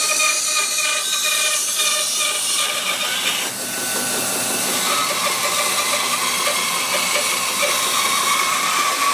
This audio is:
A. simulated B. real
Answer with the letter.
B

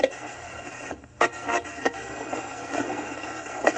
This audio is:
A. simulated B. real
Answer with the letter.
A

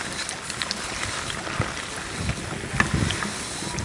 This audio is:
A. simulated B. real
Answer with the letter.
B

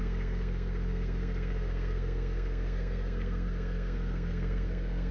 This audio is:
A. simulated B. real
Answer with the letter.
A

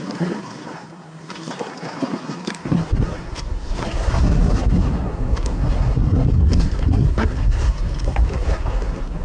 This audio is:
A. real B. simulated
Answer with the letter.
B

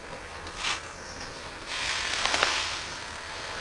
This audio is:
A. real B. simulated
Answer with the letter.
B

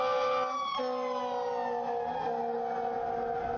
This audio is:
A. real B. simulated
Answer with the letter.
A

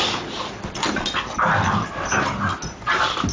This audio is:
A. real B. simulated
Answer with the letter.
A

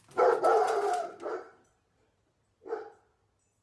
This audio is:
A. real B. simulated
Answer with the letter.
A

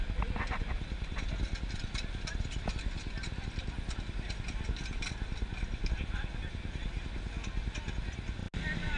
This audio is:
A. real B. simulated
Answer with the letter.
A